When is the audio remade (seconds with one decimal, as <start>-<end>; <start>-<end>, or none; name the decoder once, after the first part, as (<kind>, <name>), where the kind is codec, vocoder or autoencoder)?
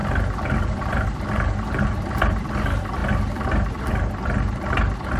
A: 0.0-2.5 (vocoder, BigVGAN v2)